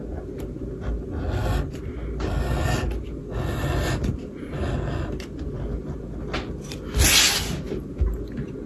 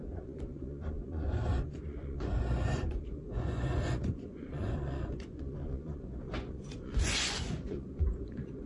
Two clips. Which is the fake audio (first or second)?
second